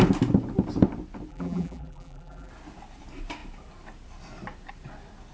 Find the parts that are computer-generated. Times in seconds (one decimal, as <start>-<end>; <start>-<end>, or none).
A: 1.3-2.5